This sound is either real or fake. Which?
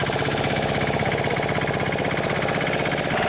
real